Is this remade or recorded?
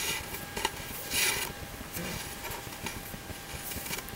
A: recorded